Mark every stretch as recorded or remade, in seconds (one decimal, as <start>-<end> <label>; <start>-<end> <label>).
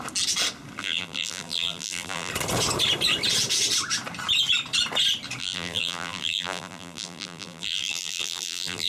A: 0.0-0.8 recorded; 0.8-2.3 remade; 2.3-5.4 recorded; 5.4-8.9 remade